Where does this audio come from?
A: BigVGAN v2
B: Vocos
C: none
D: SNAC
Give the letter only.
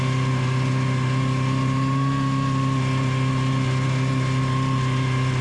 C